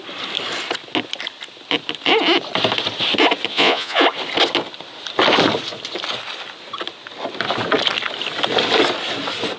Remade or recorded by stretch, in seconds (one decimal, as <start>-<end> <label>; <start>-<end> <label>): 0.0-3.5 recorded; 3.5-4.0 remade; 4.0-9.6 recorded